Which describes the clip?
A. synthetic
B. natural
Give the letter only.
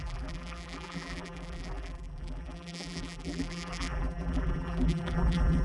A